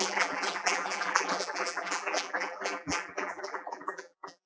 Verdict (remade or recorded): remade